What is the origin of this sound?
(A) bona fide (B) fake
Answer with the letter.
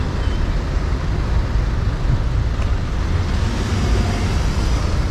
A